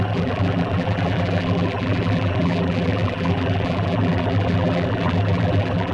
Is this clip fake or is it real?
fake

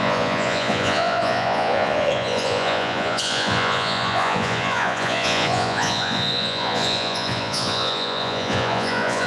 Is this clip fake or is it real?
fake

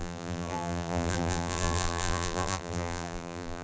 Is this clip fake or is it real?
fake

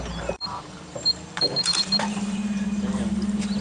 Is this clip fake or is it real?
fake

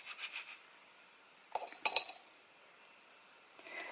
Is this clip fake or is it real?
real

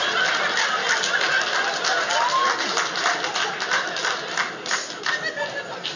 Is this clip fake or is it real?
real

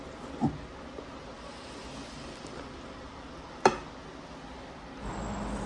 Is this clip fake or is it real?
real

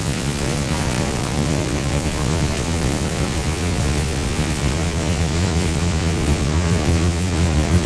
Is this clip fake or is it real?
fake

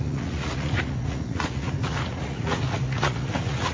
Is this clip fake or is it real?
fake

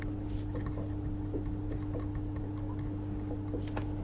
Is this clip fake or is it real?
real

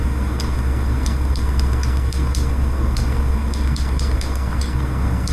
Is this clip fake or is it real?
fake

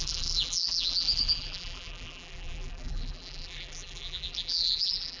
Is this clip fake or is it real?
fake